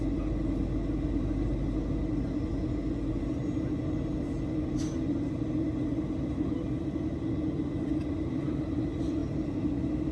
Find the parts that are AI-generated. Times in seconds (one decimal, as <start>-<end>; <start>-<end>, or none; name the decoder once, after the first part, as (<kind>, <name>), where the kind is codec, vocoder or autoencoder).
none

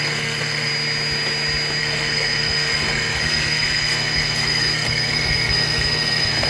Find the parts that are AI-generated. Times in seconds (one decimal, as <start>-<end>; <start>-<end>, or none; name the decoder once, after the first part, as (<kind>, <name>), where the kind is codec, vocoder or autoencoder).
0.0-0.7 (codec, SNAC); 1.8-6.5